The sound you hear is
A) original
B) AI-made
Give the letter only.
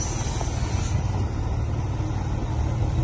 A